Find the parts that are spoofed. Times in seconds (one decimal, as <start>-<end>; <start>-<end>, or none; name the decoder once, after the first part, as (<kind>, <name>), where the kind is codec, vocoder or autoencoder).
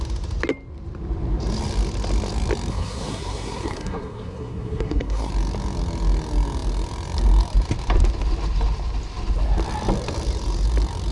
2.7-5.3 (codec, SNAC)